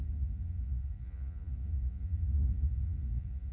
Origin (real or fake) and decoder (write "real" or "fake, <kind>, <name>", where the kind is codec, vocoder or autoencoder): fake, vocoder, Vocos